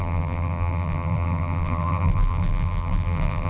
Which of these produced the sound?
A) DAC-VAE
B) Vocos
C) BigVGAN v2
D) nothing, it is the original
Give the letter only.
C